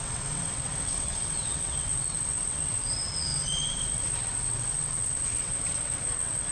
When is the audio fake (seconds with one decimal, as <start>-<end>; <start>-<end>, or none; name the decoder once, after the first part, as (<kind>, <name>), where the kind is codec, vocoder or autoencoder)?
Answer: 0.0-6.5 (vocoder, WaveNeXt)